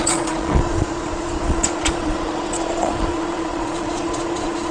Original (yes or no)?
no